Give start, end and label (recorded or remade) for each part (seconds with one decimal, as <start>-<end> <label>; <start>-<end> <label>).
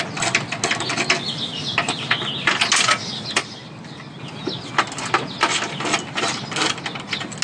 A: 0.0-1.5 recorded; 1.5-2.3 remade; 2.3-3.4 recorded; 3.4-4.2 remade; 4.2-7.4 recorded